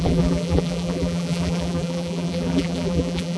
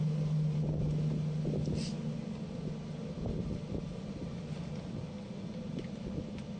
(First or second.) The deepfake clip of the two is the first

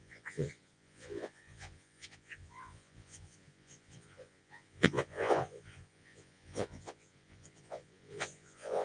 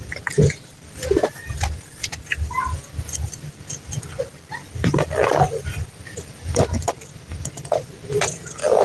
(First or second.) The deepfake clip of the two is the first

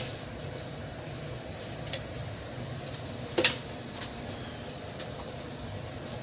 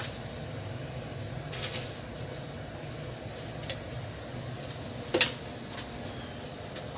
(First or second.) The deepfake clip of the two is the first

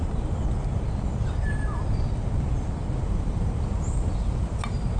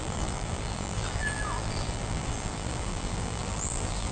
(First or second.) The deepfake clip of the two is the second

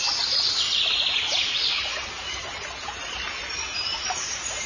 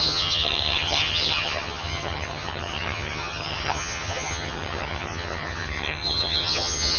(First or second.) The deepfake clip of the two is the second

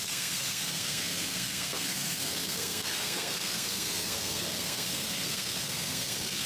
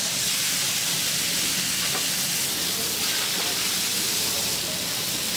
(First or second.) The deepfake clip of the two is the first